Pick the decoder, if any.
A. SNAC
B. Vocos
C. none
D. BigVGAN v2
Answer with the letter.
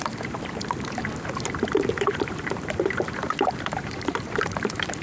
D